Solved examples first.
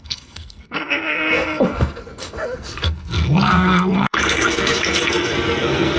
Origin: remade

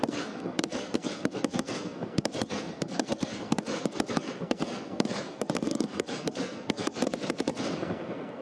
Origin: remade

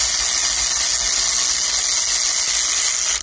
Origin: recorded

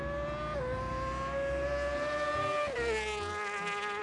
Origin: recorded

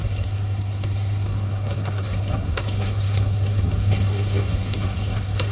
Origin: remade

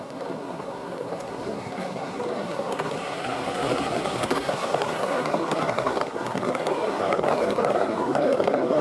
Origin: remade